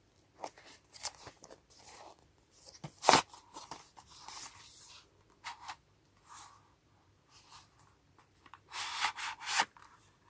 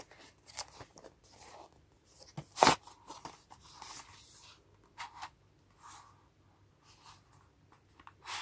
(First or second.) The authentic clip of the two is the second